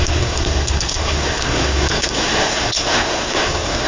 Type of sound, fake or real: fake